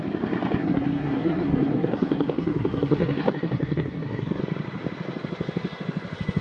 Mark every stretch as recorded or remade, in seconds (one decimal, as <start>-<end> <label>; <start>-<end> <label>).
0.0-0.6 recorded; 0.6-4.4 remade; 4.4-6.4 recorded